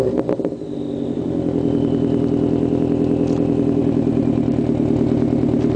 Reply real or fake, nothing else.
real